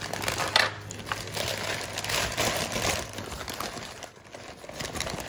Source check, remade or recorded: recorded